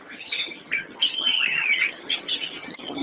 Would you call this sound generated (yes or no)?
yes